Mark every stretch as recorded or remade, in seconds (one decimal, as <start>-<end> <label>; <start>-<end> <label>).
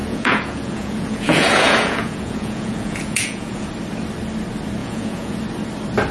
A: 0.0-3.7 remade; 3.7-4.8 recorded; 4.8-5.4 remade; 5.4-6.1 recorded